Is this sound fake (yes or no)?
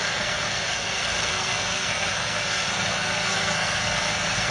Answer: yes